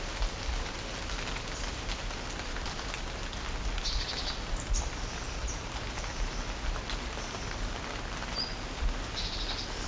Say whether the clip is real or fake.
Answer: real